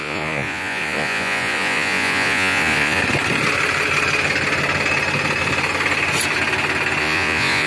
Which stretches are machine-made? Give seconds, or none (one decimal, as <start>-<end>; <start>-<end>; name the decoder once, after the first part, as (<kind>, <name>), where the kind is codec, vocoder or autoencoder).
0.0-3.0 (vocoder, Vocos); 7.0-7.7